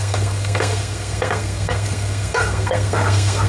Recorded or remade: remade